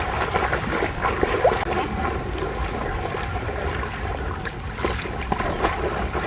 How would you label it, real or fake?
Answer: real